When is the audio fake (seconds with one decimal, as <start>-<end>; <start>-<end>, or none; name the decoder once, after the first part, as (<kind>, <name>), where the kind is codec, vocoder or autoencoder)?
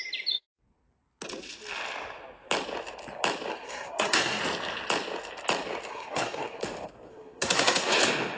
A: 3.5-4.4 (codec, SNAC); 5.9-6.6; 7.1-7.9